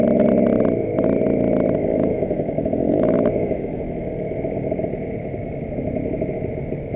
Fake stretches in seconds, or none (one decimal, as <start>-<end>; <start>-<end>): 1.9-3.8